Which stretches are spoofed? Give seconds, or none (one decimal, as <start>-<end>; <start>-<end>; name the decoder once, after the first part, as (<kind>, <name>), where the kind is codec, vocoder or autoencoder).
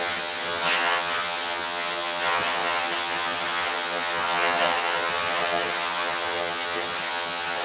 0.0-7.6 (vocoder, HiFi-GAN)